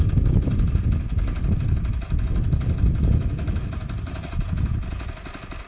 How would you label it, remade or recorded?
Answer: recorded